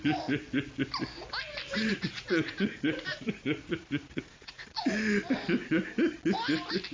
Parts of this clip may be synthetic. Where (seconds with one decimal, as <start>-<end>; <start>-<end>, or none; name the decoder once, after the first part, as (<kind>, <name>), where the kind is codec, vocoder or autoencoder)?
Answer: 1.9-4.9 (vocoder, Vocos)